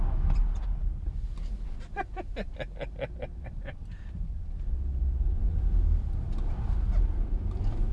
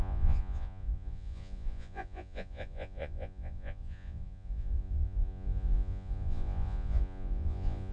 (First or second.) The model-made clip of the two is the second